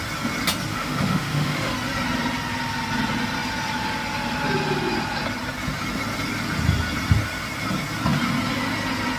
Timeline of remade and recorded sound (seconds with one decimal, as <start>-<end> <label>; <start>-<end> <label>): 0.0-0.7 recorded; 0.7-1.7 remade; 1.7-9.2 recorded